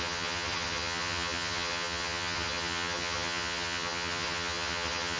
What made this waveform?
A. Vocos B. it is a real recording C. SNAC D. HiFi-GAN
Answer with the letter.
D